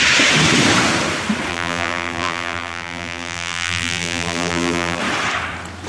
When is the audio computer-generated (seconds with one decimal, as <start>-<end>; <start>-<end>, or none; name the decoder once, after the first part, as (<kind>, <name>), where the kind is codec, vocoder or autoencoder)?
1.5-5.0 (vocoder, BigVGAN v2)